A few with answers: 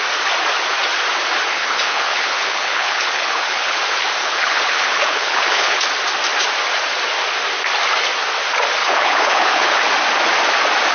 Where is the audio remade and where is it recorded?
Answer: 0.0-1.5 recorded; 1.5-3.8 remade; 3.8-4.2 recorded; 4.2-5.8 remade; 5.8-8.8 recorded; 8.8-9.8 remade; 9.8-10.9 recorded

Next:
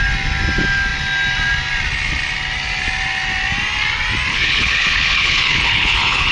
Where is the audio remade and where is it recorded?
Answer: 0.0-4.3 recorded; 4.3-6.3 remade

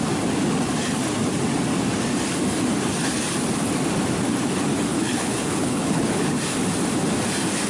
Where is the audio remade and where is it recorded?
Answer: 0.0-4.9 recorded; 4.9-6.4 remade; 6.4-7.7 recorded